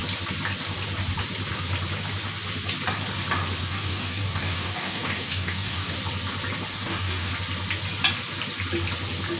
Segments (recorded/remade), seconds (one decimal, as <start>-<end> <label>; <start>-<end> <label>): 0.0-3.6 recorded; 3.6-6.0 remade; 6.0-6.7 recorded; 6.7-7.3 remade; 7.3-9.4 recorded